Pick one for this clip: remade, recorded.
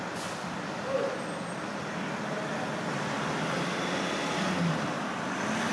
recorded